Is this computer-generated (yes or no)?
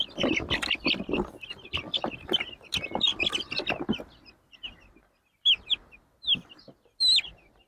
no